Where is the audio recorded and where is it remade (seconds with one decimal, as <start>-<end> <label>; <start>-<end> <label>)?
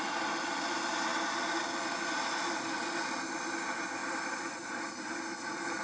0.0-5.8 recorded